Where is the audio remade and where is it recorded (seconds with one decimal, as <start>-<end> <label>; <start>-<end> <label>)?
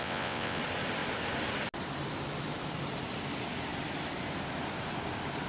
0.0-0.6 remade; 0.6-5.5 recorded